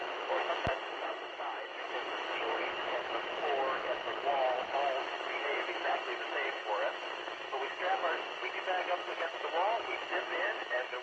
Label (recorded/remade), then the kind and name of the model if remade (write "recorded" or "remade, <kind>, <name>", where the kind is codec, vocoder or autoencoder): remade, autoencoder, DAC-VAE